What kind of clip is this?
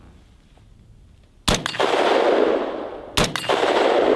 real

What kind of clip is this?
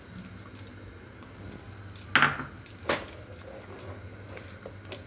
real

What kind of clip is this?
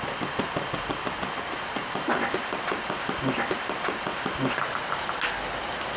real